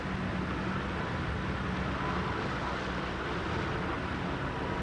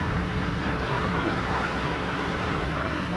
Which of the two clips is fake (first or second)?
second